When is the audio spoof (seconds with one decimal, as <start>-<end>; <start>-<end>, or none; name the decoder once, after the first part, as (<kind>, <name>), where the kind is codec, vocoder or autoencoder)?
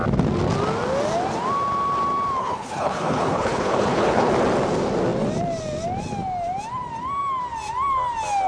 2.4-4.3 (codec, HILCodec)